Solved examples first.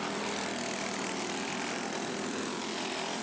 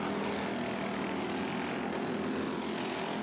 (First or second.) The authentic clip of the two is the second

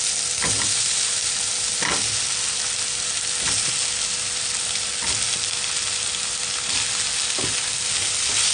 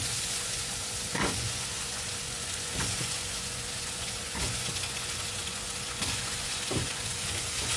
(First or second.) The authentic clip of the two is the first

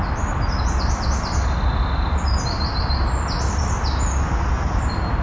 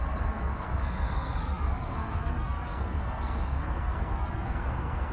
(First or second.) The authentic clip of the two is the first